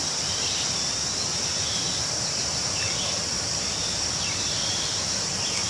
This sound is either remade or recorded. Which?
recorded